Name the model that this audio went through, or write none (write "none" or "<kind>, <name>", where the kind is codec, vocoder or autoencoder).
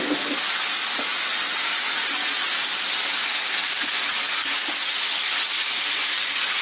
none